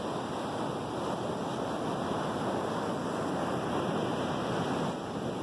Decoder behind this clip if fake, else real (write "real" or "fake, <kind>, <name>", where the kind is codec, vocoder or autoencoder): real